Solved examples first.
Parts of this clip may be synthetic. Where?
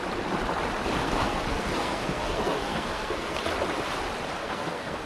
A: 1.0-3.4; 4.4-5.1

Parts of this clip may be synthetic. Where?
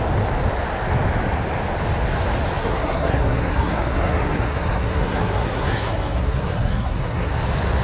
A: 2.6-7.3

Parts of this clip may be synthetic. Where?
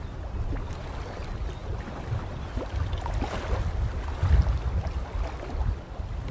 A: none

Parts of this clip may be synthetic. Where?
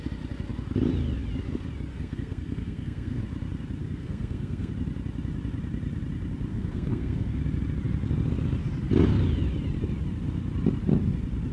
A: 1.9-3.2; 3.8-4.7; 6.5-7.4